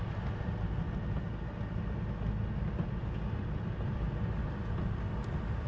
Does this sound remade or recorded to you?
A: recorded